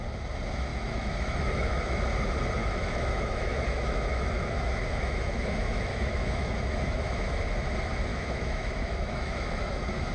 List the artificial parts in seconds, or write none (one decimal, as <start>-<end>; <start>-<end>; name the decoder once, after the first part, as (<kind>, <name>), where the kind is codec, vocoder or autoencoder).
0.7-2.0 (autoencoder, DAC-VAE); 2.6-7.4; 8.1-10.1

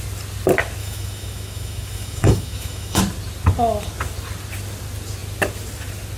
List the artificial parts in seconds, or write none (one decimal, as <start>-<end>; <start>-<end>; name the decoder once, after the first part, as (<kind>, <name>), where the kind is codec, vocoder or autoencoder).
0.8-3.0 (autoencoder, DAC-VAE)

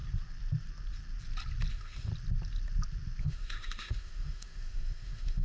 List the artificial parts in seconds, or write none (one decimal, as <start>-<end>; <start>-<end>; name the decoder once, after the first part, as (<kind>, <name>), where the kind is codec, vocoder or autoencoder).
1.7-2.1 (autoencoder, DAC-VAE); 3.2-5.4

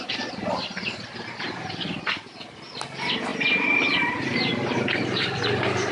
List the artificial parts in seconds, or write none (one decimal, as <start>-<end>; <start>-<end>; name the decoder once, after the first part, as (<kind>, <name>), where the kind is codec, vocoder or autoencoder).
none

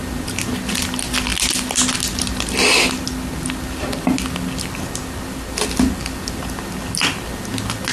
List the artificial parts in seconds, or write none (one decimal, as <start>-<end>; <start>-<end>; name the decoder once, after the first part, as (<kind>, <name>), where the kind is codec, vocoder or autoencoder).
none

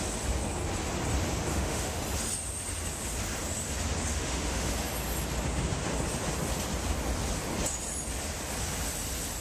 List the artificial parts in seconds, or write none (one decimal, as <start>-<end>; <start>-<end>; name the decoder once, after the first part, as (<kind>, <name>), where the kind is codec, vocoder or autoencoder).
1.5-2.0 (autoencoder, DAC-VAE); 4.1-4.7

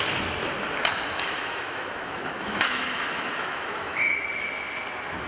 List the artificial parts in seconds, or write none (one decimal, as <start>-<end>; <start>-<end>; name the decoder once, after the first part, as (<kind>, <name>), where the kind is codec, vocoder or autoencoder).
0.9-4.1 (autoencoder, DAC-VAE)